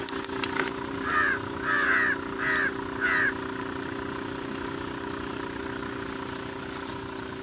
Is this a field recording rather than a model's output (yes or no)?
yes